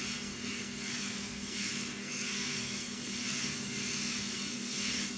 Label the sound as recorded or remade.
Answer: remade